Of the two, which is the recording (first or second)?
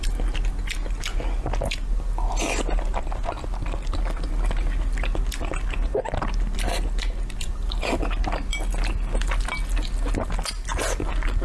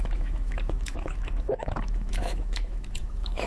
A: first